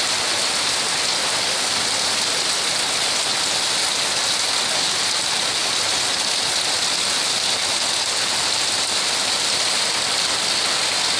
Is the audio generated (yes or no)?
no